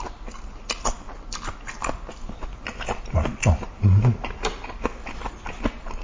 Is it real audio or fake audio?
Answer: real